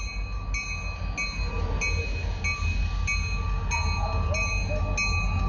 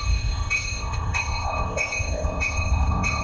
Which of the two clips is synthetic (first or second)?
second